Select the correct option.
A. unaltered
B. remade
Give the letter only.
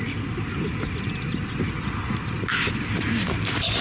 A